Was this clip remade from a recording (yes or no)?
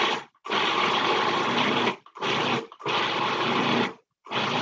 no